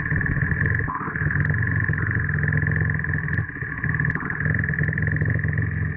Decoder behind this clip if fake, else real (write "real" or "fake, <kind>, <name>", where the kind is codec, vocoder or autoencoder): real